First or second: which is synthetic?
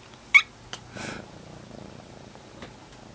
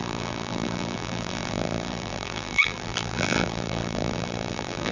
second